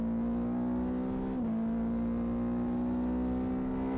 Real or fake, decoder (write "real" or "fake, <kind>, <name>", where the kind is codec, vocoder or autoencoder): real